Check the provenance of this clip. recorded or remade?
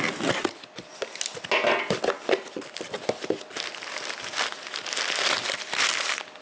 recorded